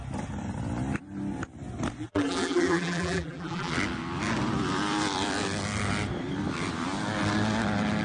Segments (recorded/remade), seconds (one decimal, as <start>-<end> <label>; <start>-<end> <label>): 0.0-2.0 recorded; 2.0-3.7 remade; 3.7-8.0 recorded